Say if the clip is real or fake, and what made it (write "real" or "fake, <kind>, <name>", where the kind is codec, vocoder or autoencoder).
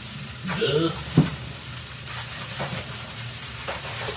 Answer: fake, vocoder, BigVGAN v2